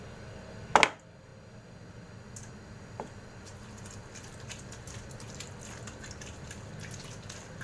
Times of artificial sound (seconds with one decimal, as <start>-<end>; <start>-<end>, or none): none